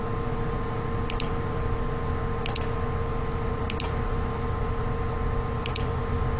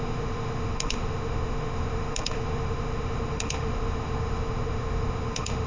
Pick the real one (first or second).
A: first